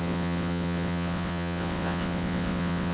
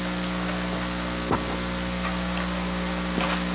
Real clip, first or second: second